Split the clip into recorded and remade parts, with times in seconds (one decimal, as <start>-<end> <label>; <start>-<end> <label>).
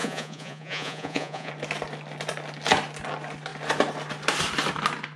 0.0-1.5 remade; 1.5-5.2 recorded